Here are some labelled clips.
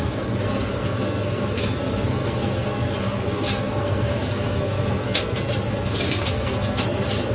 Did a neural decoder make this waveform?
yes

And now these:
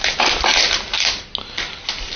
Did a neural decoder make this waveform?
no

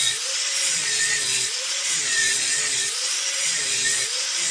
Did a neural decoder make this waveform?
yes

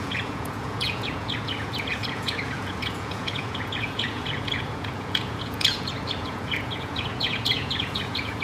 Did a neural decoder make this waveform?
yes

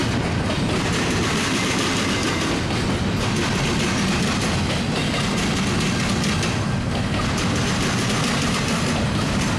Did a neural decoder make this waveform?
no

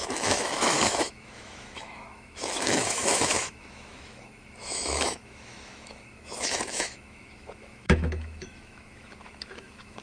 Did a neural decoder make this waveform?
yes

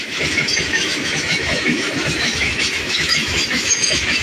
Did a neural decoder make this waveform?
yes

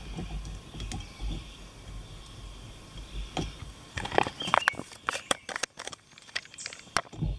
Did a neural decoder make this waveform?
no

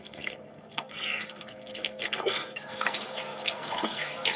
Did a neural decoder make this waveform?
yes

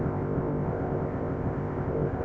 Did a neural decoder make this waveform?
yes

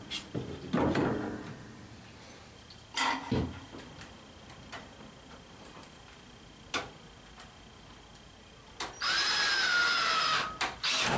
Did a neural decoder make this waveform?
no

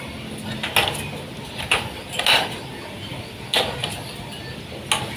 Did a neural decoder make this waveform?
no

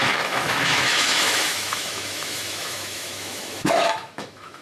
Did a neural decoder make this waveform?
yes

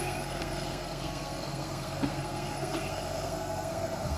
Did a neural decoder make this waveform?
yes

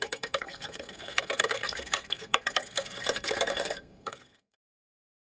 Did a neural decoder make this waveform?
yes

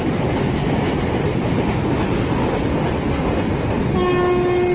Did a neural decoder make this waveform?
no